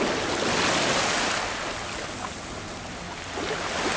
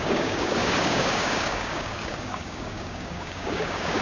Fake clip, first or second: second